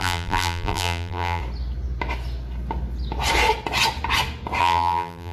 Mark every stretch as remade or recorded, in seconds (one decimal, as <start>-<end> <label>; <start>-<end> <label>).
0.0-1.4 remade; 1.4-4.6 recorded; 4.6-5.3 remade